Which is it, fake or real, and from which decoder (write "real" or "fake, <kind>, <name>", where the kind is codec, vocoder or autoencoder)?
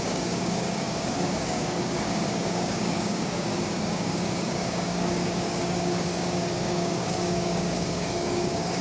fake, codec, DAC